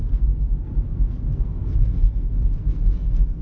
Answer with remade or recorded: remade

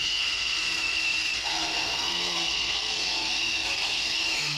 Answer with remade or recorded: remade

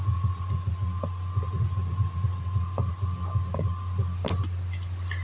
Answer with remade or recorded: recorded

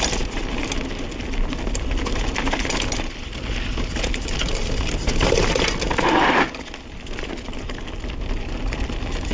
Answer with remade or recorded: recorded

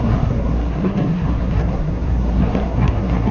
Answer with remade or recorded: remade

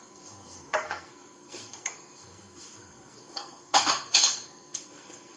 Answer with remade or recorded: remade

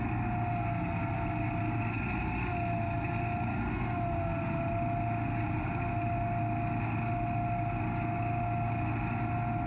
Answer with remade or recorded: recorded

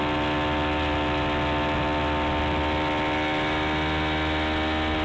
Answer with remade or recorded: recorded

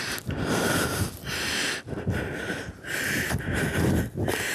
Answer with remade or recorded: recorded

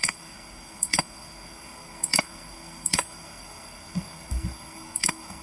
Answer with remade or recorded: remade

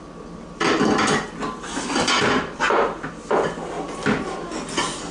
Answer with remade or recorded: recorded